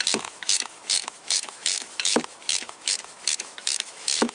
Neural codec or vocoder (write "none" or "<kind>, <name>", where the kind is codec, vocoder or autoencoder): autoencoder, DAC-VAE